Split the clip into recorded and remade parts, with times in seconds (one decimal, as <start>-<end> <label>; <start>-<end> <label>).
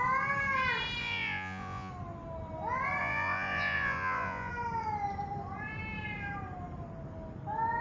0.0-1.0 recorded; 1.0-1.9 remade; 1.9-3.0 recorded; 3.0-4.5 remade; 4.5-7.8 recorded